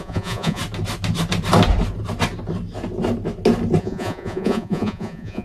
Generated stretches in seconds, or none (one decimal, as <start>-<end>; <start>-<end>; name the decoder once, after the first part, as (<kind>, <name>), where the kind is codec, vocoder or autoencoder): 0.0-0.6 (vocoder, Vocos); 3.8-5.4